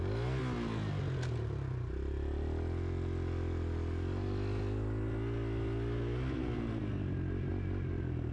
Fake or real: real